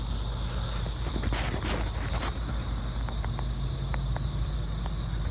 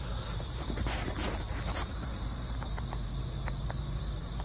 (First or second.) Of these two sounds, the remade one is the second